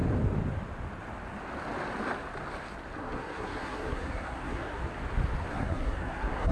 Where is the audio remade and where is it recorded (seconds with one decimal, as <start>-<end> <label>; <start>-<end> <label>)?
0.0-3.0 recorded; 3.0-4.8 remade; 4.8-5.5 recorded; 5.5-6.5 remade